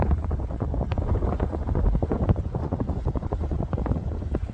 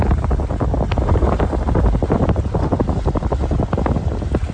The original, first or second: second